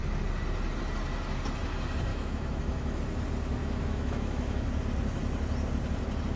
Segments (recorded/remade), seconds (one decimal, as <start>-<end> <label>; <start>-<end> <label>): 0.0-2.1 recorded; 2.1-3.0 remade; 3.0-3.6 recorded; 3.6-4.7 remade; 4.7-6.4 recorded